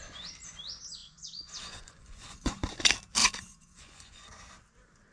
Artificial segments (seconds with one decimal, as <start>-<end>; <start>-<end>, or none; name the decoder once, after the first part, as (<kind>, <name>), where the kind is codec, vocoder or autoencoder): 1.0-2.7 (vocoder, Vocos); 3.2-4.3